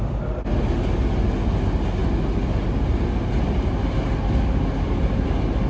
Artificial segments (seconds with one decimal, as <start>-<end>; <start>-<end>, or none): none

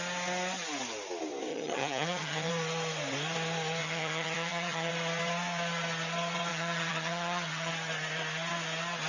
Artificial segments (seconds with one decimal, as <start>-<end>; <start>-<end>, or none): 1.5-2.5; 3.8-4.9; 6.5-7.7

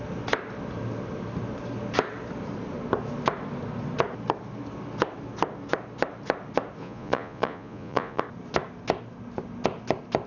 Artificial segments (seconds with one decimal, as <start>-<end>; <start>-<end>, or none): 6.8-8.2

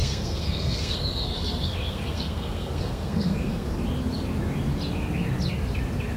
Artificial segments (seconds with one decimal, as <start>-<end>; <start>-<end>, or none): 0.0-3.7

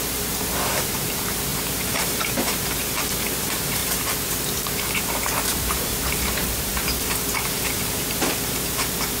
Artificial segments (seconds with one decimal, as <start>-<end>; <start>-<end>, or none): 0.0-9.2

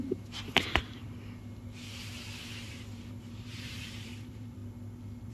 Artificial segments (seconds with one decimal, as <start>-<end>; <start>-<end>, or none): 0.0-1.0; 2.4-4.6

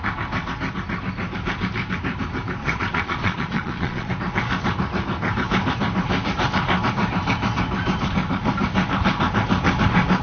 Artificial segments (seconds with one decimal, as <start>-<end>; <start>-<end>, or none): 2.6-4.1